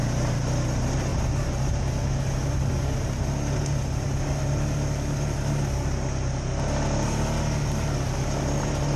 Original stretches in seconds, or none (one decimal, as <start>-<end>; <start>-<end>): 0.0-9.0